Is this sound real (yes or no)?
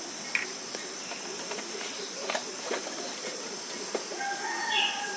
yes